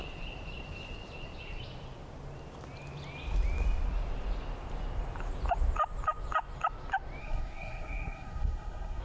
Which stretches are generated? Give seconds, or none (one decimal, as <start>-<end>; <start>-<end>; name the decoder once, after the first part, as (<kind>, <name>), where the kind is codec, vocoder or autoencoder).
7.2-9.0 (codec, SNAC)